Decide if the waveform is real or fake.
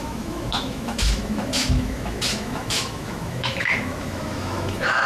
fake